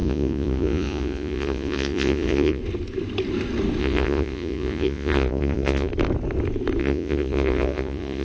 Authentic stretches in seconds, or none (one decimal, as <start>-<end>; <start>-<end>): 2.6-3.8; 5.9-6.8